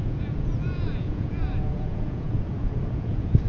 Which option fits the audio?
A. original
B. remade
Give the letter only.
B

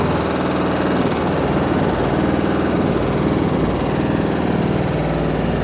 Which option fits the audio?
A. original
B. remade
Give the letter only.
A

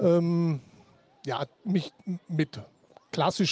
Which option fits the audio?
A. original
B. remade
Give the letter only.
A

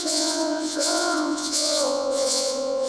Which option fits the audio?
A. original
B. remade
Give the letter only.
B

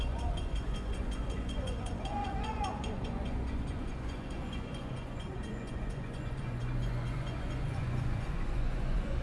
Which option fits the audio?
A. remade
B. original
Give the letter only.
A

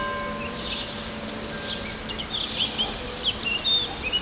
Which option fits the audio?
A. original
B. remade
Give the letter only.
A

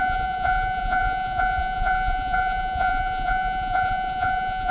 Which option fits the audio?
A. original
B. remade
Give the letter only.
B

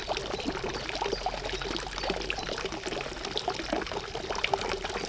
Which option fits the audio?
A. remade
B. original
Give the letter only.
B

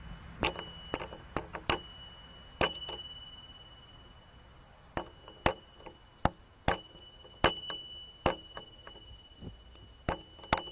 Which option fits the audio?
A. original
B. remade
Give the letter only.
A